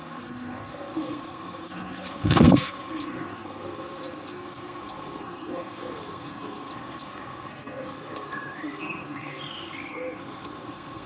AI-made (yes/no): yes